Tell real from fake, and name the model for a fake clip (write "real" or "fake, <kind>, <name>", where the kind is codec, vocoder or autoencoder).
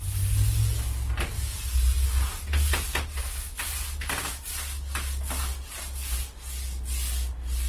real